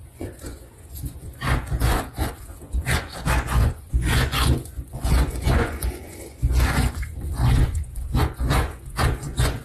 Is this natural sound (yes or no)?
no